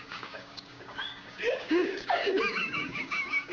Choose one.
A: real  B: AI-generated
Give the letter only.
B